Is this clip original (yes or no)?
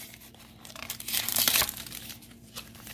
no